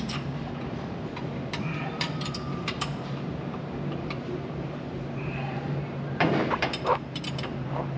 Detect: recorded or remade remade